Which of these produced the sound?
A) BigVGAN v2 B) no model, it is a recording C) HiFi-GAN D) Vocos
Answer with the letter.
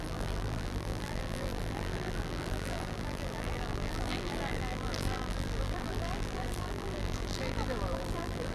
A